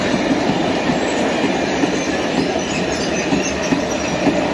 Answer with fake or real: fake